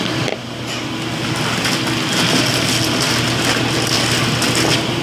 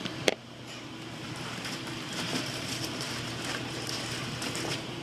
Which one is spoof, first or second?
second